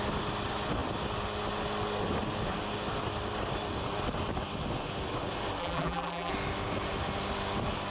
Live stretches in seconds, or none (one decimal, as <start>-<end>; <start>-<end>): 0.0-5.6; 6.3-7.9